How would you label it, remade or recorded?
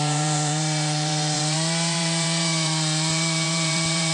remade